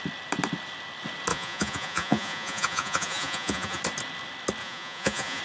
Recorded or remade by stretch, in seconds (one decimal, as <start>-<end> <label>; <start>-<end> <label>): 0.0-1.3 recorded; 1.3-3.8 remade; 3.8-4.6 recorded; 4.6-5.4 remade